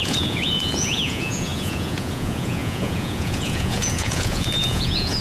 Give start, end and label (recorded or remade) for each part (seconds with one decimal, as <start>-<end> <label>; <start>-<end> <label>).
0.0-5.2 remade